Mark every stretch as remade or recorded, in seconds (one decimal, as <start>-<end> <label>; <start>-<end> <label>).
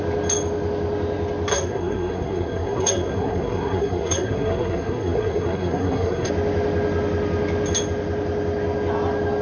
0.0-1.5 recorded; 1.5-6.3 remade; 6.3-9.4 recorded